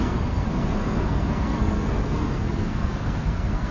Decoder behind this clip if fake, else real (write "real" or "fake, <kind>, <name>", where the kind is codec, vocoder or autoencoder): fake, codec, SNAC